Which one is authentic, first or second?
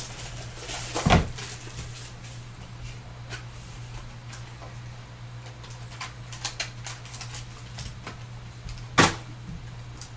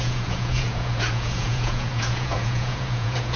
first